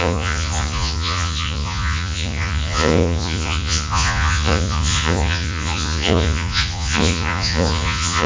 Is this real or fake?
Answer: fake